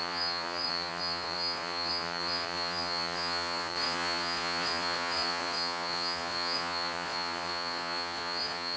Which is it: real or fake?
fake